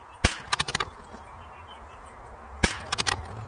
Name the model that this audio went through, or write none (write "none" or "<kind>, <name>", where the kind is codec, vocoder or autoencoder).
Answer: none